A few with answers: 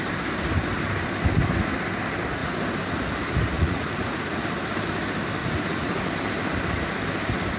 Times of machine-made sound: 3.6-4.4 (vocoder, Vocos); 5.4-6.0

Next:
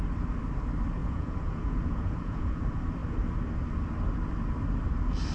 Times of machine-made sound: 1.0-2.6 (vocoder, Vocos)

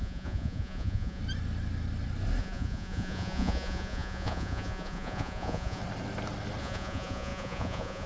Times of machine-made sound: 0.0-1.2 (vocoder, Vocos); 2.4-5.8; 6.6-8.1